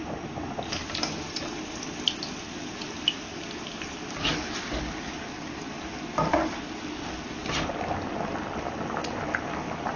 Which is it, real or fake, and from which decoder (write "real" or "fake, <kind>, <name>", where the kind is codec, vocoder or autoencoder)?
real